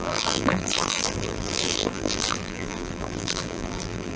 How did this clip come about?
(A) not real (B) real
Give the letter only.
A